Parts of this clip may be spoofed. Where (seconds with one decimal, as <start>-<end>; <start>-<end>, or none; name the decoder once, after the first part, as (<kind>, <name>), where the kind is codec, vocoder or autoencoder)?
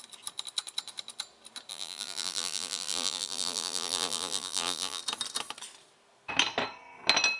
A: 1.7-5.0 (vocoder, BigVGAN v2)